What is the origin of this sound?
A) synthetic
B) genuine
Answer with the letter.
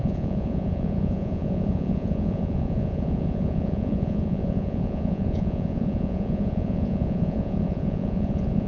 A